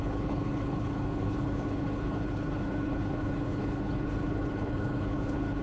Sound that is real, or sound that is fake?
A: fake